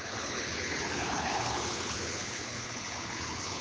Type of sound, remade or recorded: remade